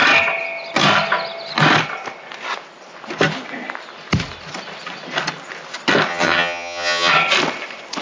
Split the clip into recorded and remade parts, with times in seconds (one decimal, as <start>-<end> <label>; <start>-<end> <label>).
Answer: 0.0-6.1 recorded; 6.1-7.1 remade; 7.1-8.0 recorded